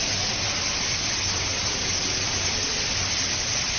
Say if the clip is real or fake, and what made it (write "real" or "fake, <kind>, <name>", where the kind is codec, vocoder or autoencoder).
real